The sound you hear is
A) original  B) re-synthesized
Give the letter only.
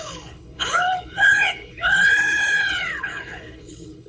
B